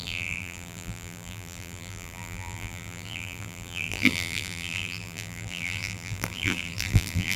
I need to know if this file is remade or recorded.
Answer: remade